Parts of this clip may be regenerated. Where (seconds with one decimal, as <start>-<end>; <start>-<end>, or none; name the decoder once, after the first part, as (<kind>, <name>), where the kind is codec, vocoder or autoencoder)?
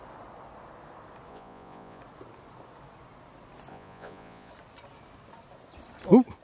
1.3-2.0 (vocoder, Vocos); 3.7-4.5